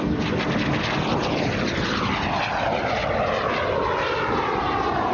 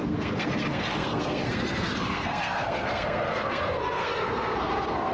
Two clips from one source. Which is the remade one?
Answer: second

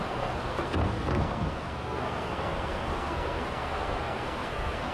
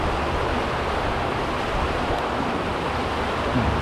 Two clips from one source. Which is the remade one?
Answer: first